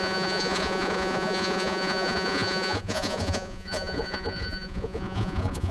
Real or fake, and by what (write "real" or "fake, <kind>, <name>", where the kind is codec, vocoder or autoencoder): fake, vocoder, Vocos